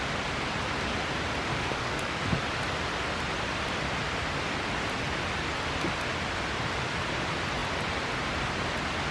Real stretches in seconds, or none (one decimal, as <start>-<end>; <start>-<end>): 0.0-1.5; 2.2-9.1